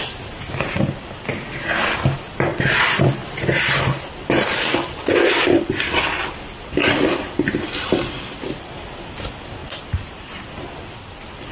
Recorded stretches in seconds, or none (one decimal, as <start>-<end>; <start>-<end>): 0.0-2.5; 5.3-9.6; 10.6-11.5